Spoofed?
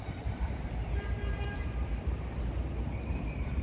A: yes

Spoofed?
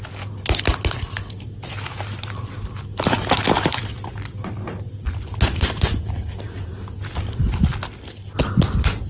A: no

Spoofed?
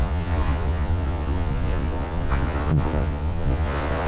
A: yes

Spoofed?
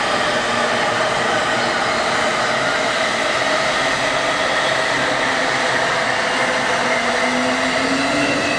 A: no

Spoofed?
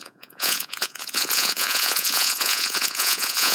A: yes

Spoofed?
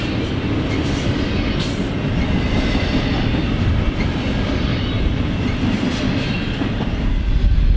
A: no